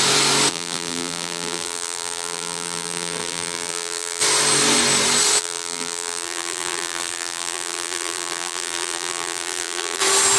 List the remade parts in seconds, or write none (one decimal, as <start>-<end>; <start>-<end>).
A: 0.5-4.2; 5.4-10.0